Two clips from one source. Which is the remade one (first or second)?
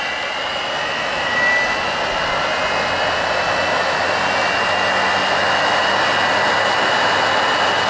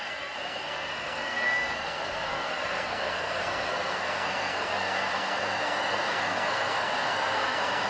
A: second